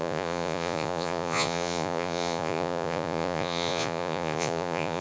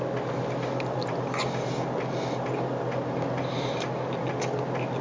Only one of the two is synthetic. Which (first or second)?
first